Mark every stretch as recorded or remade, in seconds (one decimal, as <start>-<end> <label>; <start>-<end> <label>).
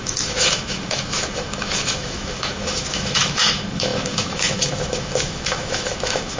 0.0-6.4 remade